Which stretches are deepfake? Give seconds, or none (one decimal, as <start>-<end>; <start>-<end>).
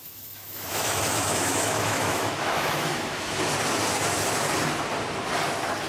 0.0-3.5